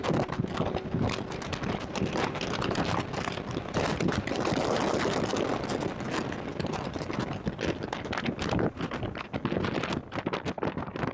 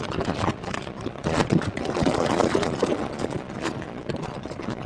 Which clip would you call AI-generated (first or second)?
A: second